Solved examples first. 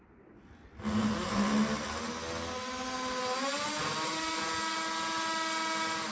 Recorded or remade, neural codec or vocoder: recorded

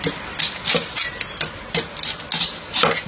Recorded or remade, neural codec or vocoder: recorded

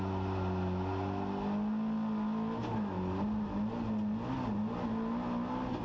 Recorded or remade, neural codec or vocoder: recorded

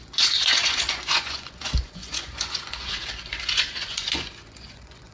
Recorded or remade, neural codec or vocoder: remade, vocoder, Vocos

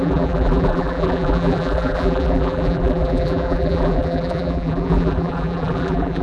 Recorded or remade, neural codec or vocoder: remade, vocoder, BigVGAN v2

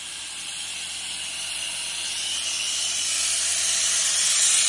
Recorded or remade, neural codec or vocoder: recorded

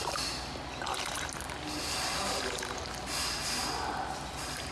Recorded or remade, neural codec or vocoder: recorded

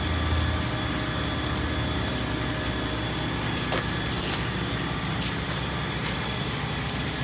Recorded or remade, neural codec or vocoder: recorded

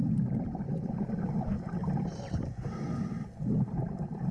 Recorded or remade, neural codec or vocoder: recorded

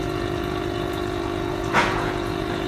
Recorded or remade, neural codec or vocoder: remade, vocoder, Vocos